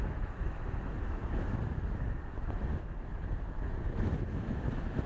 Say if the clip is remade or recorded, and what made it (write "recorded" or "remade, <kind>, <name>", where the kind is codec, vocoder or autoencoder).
remade, autoencoder, DAC-VAE